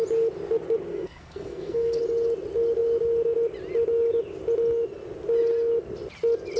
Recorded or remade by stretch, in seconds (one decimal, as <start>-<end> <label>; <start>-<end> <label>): 0.0-0.9 recorded; 0.9-2.0 remade; 2.0-6.6 recorded